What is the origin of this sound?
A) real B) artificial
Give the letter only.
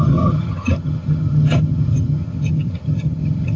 B